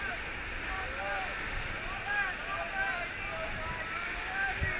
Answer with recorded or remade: recorded